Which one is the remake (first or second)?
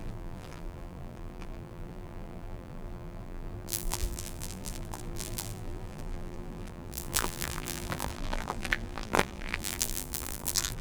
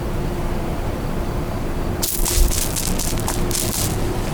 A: first